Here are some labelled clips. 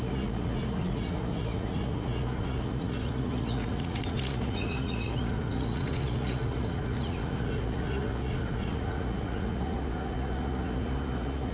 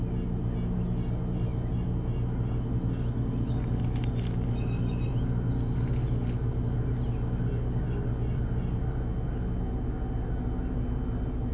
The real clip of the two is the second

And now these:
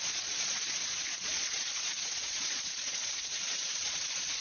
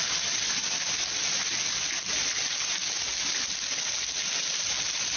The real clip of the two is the second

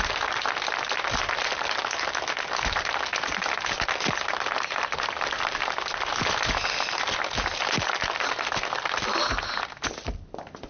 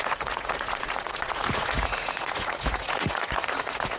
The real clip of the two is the first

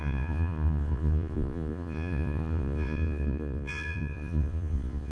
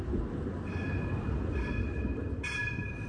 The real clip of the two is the second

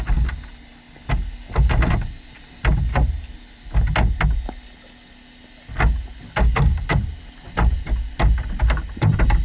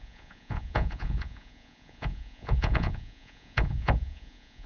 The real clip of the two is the first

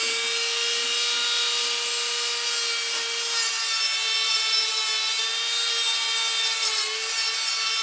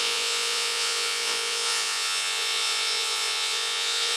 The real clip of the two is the first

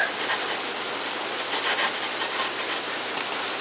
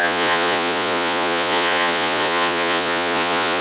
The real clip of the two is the first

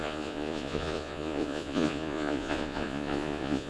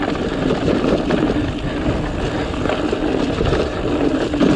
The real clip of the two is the second